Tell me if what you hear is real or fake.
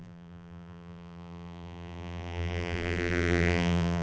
fake